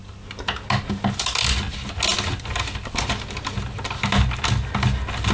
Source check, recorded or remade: recorded